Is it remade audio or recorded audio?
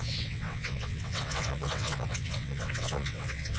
remade